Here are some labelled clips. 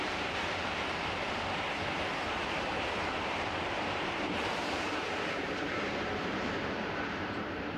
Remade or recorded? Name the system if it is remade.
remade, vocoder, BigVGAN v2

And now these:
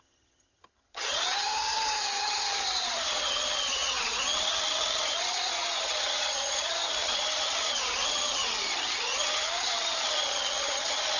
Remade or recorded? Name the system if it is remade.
remade, vocoder, HiFi-GAN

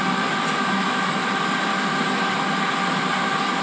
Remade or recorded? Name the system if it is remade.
remade, vocoder, BigVGAN v2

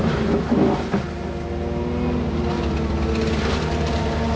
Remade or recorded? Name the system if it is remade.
recorded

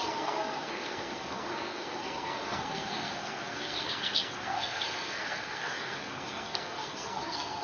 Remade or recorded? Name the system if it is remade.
remade, codec, SNAC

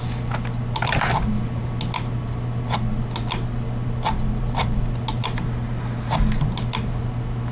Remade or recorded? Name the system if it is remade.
recorded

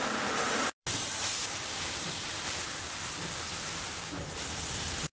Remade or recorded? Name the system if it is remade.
remade, vocoder, BigVGAN v2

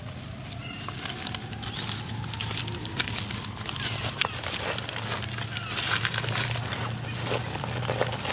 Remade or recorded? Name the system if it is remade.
recorded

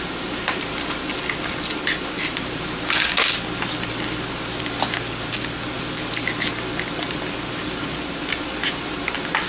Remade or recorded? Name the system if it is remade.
recorded